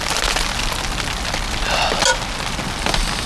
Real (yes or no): yes